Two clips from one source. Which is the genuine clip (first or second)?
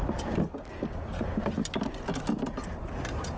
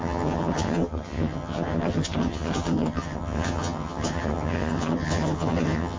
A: first